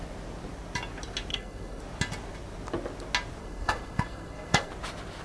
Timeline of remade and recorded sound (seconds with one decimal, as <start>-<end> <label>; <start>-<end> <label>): 0.0-1.3 recorded; 1.3-1.8 remade; 1.8-3.4 recorded; 3.4-4.7 remade; 4.7-5.2 recorded